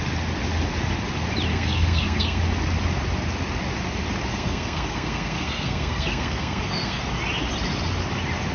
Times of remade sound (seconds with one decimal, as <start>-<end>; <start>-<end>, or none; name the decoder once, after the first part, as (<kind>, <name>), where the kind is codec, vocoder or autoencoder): 1.5-2.4 (codec, SNAC); 4.3-7.0